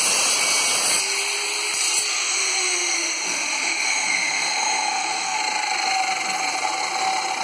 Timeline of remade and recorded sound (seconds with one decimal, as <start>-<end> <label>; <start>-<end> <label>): 0.0-2.2 recorded; 2.2-5.4 remade; 5.4-7.4 recorded